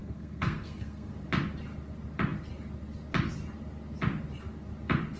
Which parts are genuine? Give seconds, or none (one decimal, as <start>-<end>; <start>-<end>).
1.1-5.2